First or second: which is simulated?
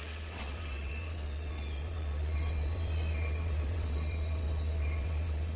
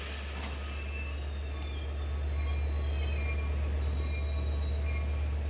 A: first